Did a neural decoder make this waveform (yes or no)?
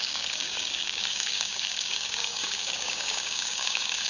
yes